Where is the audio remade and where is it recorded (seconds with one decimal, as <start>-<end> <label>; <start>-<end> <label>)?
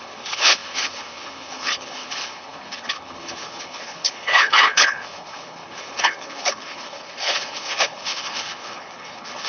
0.0-9.5 remade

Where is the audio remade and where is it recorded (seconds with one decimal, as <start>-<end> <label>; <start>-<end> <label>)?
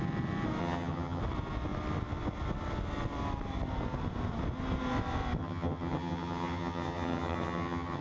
0.0-0.6 recorded; 0.6-1.2 remade; 1.2-5.4 recorded; 5.4-8.0 remade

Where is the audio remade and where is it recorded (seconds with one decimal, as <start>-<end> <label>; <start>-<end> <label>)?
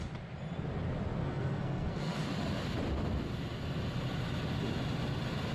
0.0-1.2 recorded; 1.2-2.2 remade; 2.2-5.5 recorded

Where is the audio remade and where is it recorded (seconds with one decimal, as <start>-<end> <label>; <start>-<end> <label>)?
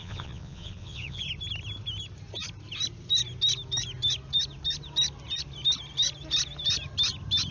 0.0-1.2 remade; 1.2-7.5 recorded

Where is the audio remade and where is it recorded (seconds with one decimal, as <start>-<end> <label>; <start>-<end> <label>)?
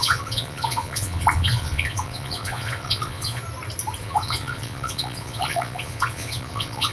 0.0-3.4 remade; 3.4-4.0 recorded; 4.0-6.9 remade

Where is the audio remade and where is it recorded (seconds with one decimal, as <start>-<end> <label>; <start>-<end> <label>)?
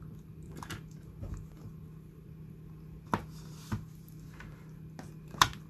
0.0-5.7 recorded